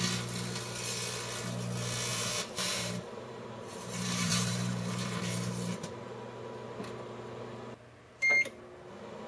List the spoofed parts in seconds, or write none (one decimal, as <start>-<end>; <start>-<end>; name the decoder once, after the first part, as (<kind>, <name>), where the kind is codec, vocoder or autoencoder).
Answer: 2.1-6.0 (vocoder, BigVGAN v2)